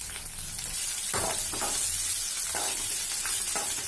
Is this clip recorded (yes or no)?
yes